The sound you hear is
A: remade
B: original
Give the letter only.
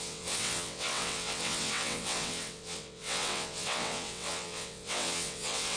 A